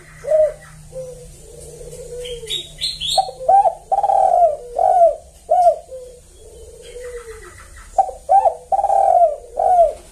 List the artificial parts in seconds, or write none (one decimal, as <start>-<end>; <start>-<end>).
1.2-2.4; 3.6-4.3; 4.8-7.6